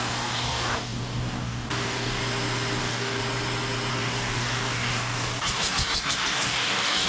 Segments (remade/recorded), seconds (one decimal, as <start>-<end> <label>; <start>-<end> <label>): 0.0-2.2 remade; 2.2-2.8 recorded; 2.8-3.2 remade; 3.2-3.9 recorded; 3.9-7.1 remade